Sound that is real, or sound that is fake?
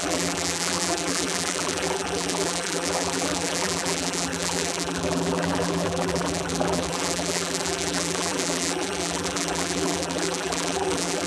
fake